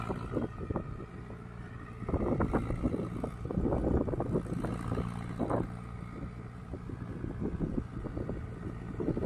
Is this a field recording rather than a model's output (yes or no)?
yes